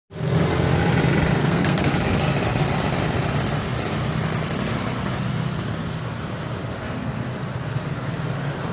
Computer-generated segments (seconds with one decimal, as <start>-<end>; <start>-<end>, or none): 1.4-1.9

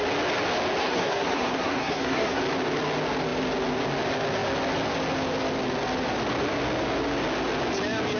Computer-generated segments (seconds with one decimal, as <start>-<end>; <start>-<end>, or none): 0.8-2.4

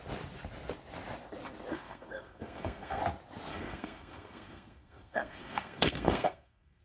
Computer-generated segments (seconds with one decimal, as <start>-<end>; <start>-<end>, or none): 1.7-3.0; 3.5-6.8